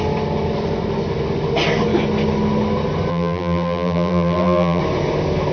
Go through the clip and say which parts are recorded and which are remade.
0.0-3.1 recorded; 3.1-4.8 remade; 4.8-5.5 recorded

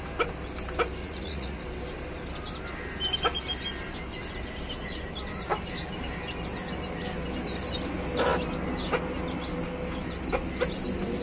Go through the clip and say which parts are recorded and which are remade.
0.0-1.0 recorded; 1.0-1.6 remade; 1.6-11.2 recorded

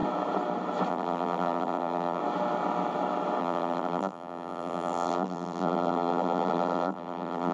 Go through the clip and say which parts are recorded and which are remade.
0.0-0.9 recorded; 0.9-2.2 remade; 2.2-3.4 recorded; 3.4-7.5 remade

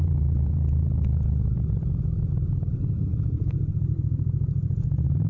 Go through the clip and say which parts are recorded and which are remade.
0.0-5.3 remade

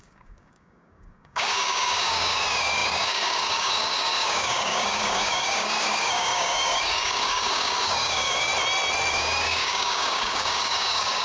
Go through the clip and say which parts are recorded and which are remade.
0.0-8.5 remade; 8.5-9.1 recorded; 9.1-11.2 remade

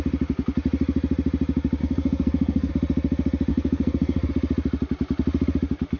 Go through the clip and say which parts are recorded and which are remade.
0.0-1.8 recorded; 1.8-2.7 remade; 2.7-3.5 recorded; 3.5-4.3 remade; 4.3-6.0 recorded

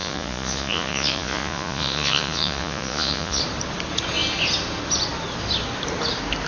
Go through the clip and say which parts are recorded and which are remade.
0.0-3.4 remade; 3.4-6.5 recorded